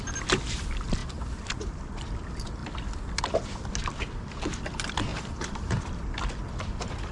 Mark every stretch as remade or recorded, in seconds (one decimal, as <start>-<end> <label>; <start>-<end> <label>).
0.0-1.0 recorded; 1.0-2.2 remade; 2.2-2.6 recorded; 2.6-3.1 remade; 3.1-5.1 recorded; 5.1-6.3 remade; 6.3-7.1 recorded